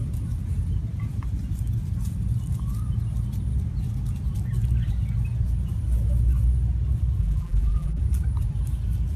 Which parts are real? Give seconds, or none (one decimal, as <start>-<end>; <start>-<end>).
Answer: 0.0-7.2; 8.0-9.2